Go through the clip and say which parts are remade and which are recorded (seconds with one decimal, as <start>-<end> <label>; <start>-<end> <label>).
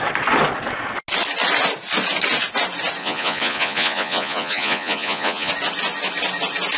0.0-3.0 recorded; 3.0-5.5 remade; 5.5-6.8 recorded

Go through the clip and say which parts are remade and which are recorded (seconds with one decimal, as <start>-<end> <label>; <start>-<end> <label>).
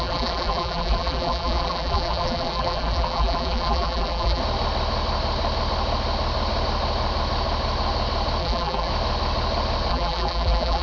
0.0-4.4 remade; 4.4-8.4 recorded; 8.4-8.9 remade; 8.9-9.9 recorded; 9.9-10.8 remade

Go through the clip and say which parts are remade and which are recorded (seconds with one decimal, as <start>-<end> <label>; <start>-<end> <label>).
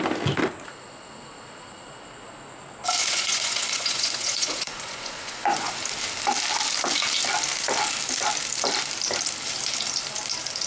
0.0-3.0 recorded; 3.0-5.7 remade; 5.7-10.7 recorded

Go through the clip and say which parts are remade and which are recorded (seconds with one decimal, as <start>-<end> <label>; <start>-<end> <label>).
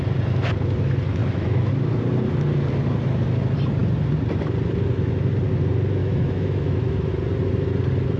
0.0-1.2 recorded; 1.2-1.7 remade; 1.7-6.0 recorded; 6.0-7.1 remade; 7.1-8.2 recorded